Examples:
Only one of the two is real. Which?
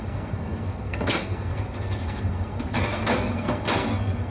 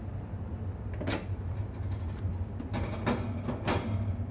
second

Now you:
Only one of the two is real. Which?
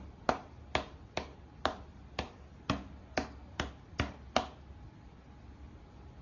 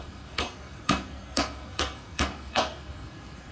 first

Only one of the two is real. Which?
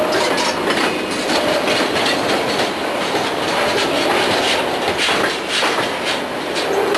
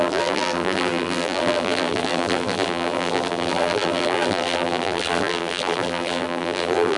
first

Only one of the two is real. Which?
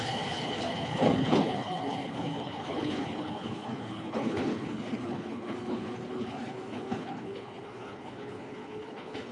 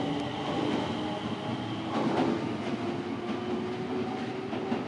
second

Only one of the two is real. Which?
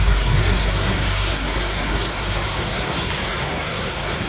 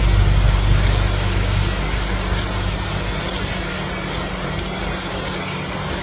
second